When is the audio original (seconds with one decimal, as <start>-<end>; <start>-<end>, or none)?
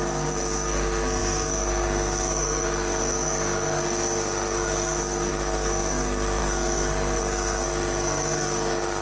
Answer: none